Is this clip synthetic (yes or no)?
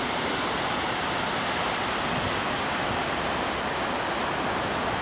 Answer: no